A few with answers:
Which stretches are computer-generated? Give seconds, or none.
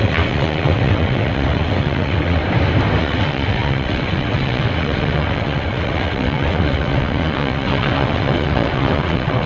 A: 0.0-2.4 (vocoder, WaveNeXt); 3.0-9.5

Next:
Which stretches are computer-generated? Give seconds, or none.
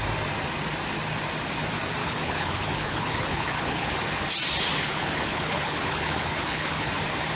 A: 2.0-3.9 (codec, HILCodec); 4.7-6.9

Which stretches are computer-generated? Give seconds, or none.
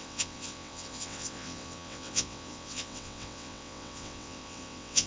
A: 0.0-5.1 (vocoder, WaveNeXt)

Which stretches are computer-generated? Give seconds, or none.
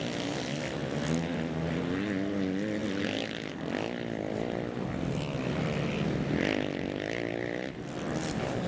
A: none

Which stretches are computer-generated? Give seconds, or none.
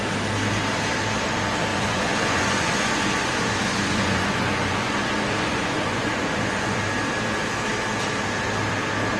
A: 1.7-6.8 (vocoder, Vocos)